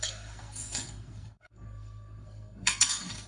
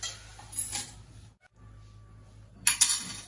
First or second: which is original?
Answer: second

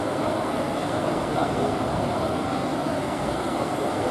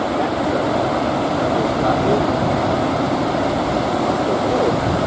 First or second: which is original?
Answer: second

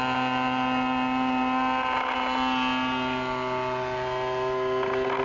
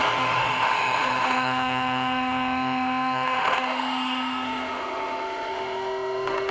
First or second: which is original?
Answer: first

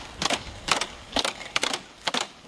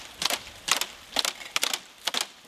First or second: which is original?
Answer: second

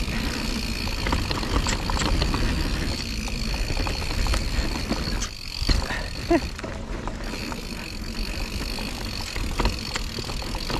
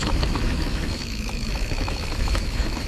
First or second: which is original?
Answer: first